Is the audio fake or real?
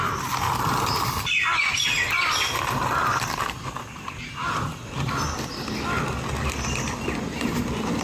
real